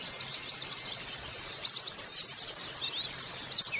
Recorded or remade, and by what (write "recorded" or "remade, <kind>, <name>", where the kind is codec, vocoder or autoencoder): recorded